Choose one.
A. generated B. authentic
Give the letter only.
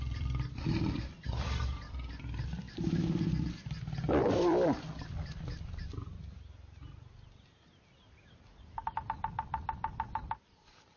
A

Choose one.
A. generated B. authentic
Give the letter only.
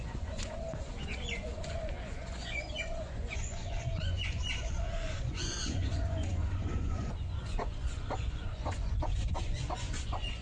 A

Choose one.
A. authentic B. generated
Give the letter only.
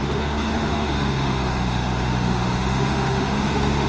B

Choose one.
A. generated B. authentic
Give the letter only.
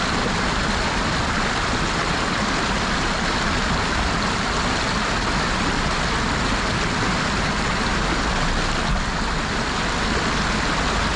B